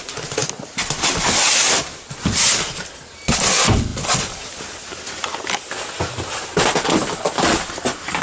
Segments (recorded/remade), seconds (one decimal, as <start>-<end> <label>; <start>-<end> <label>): 0.0-8.2 recorded